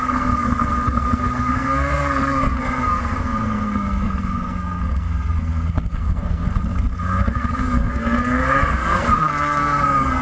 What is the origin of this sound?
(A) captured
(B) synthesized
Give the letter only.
B